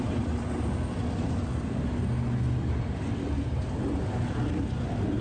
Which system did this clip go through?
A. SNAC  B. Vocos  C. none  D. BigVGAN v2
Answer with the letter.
C